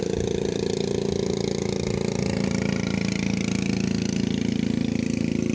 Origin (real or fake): real